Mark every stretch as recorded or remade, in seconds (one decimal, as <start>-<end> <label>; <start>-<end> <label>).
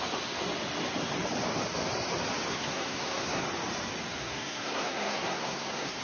0.0-2.5 recorded; 2.5-3.4 remade; 3.4-4.2 recorded; 4.2-6.0 remade